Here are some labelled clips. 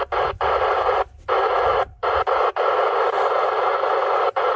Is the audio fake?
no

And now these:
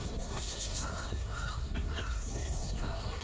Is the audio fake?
yes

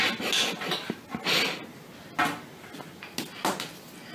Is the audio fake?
no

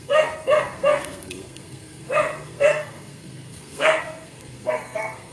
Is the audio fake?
yes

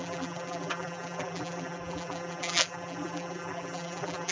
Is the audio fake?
yes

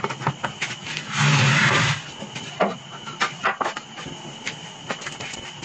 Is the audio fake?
no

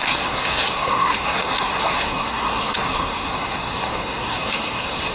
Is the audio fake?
yes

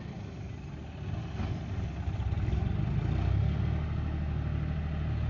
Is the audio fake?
no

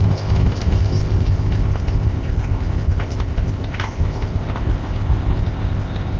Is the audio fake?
yes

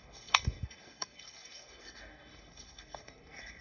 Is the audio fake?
yes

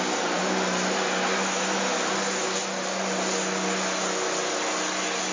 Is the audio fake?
no